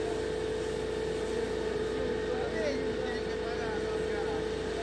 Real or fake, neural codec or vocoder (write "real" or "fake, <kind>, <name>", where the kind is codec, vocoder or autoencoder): real